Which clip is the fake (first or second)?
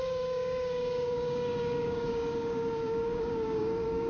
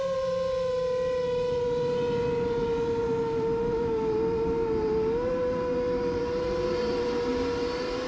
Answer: first